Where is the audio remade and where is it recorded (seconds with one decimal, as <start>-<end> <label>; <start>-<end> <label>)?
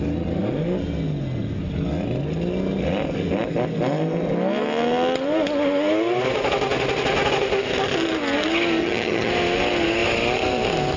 0.0-8.8 recorded; 8.8-9.3 remade; 9.3-11.0 recorded